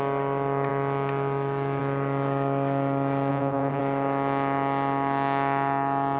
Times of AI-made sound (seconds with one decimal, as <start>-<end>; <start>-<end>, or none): 3.3-3.8